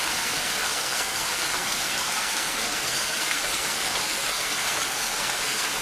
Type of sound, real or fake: fake